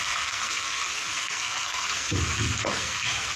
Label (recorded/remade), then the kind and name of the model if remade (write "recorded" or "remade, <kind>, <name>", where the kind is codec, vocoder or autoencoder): remade, codec, SNAC